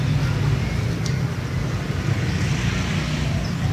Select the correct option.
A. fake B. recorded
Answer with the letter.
B